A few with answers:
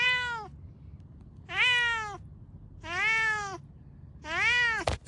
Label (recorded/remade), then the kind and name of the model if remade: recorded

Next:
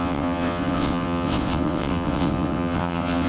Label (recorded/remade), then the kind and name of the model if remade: remade, vocoder, WaveNeXt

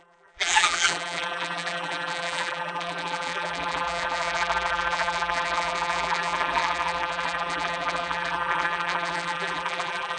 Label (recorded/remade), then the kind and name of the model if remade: remade, vocoder, BigVGAN v2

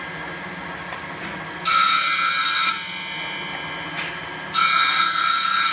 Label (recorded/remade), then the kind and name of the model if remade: recorded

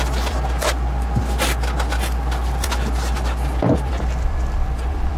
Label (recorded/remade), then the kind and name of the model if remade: recorded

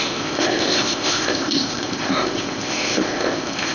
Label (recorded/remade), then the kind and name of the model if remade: remade, codec, ZipCodec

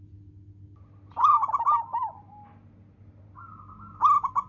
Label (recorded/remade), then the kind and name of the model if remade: recorded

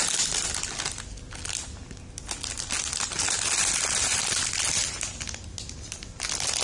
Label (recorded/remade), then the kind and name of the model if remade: recorded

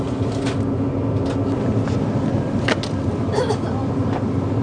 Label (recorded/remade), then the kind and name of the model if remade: recorded